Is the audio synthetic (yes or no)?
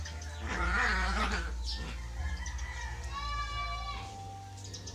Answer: no